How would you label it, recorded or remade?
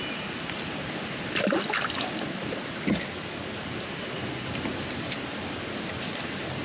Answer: recorded